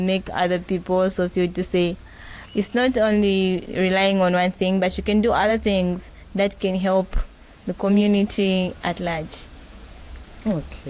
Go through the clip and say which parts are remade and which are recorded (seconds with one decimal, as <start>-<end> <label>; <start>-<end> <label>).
0.0-6.6 recorded; 6.6-10.5 remade; 10.5-10.9 recorded